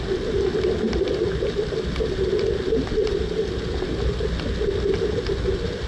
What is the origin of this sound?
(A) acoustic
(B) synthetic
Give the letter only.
A